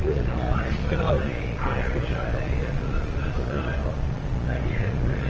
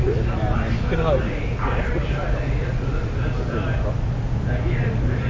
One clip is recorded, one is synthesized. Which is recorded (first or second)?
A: second